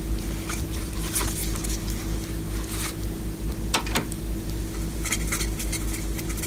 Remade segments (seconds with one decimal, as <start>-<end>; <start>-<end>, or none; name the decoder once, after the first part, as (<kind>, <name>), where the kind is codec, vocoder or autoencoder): none